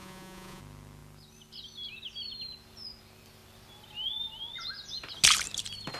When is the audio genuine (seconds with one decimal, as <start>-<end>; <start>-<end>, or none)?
0.6-6.0